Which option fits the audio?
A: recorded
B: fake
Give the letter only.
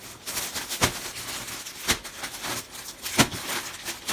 A